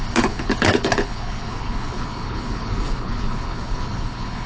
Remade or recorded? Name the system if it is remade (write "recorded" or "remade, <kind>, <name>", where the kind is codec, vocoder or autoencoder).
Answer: remade, codec, HILCodec